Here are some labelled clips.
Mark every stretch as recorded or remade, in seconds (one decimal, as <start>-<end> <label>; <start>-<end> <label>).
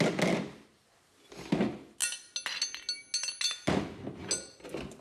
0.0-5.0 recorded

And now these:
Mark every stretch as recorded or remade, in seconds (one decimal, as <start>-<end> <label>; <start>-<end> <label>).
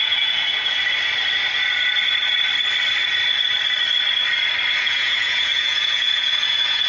0.0-0.8 remade; 0.8-4.8 recorded; 4.8-6.9 remade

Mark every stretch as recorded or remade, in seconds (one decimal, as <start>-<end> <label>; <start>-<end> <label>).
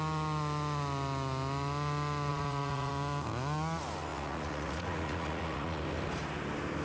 0.0-2.3 recorded; 2.3-2.9 remade; 2.9-4.1 recorded; 4.1-5.8 remade; 5.8-6.8 recorded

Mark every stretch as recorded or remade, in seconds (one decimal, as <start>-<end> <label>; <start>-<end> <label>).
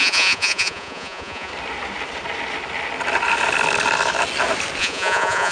0.0-1.5 remade; 1.5-4.8 recorded; 4.8-5.5 remade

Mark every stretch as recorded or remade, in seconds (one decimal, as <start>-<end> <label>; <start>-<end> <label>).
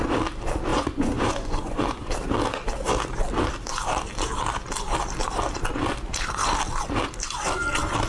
0.0-0.7 recorded; 0.7-2.1 remade; 2.1-8.1 recorded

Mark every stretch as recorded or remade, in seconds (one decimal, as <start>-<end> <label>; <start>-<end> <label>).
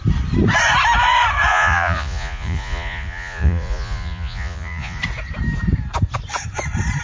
0.0-1.5 recorded; 1.5-5.0 remade; 5.0-7.0 recorded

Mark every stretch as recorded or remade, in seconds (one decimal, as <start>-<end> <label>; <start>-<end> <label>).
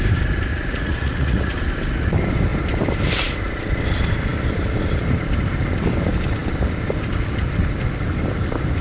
0.0-0.5 recorded; 0.5-1.5 remade; 1.5-8.8 recorded